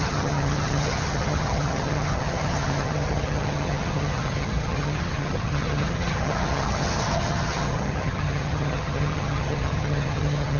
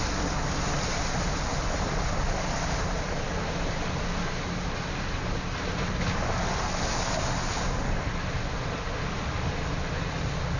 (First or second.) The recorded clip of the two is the second